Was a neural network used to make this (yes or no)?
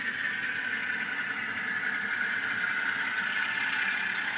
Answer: no